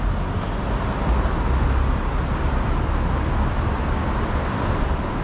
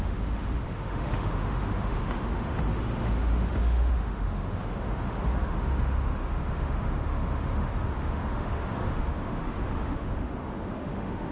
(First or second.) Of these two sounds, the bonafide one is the first